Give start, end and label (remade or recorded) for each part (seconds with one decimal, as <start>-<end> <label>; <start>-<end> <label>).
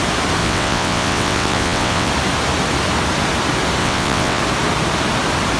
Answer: 0.0-0.4 recorded; 0.4-2.1 remade; 2.1-3.8 recorded; 3.8-4.4 remade; 4.4-5.6 recorded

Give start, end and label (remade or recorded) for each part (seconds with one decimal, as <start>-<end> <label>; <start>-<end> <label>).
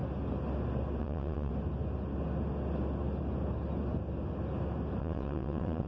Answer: 0.0-1.0 recorded; 1.0-1.5 remade; 1.5-5.0 recorded; 5.0-5.9 remade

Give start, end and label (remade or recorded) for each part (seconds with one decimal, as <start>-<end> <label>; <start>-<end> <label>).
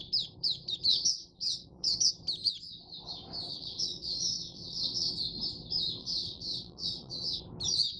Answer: 0.0-0.9 recorded; 0.9-2.1 remade; 2.1-3.5 recorded; 3.5-5.1 remade; 5.1-6.0 recorded; 6.0-7.4 remade; 7.4-8.0 recorded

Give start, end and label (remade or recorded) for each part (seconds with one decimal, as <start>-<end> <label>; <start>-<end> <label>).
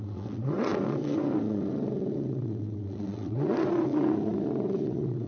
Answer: 0.0-5.3 remade